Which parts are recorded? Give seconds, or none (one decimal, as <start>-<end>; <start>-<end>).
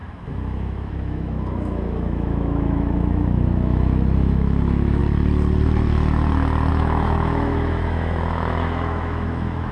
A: 5.0-6.7